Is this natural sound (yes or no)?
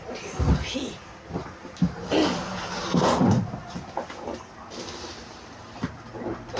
yes